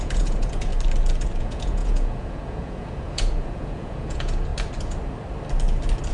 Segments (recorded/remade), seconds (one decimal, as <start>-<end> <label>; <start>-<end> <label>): 0.0-0.7 remade; 0.7-1.4 recorded; 1.4-4.5 remade; 4.5-6.1 recorded